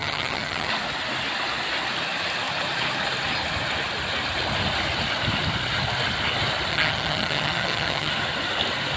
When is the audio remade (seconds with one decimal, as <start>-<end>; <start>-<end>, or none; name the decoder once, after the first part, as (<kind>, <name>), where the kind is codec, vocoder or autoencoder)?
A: 0.0-0.7 (vocoder, HiFi-GAN); 6.7-8.1